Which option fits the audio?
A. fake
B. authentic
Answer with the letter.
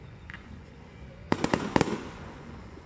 A